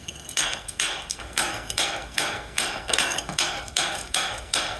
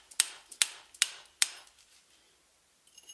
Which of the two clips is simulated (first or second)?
first